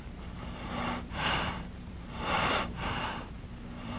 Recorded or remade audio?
remade